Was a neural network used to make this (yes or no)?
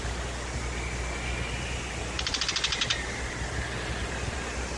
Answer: no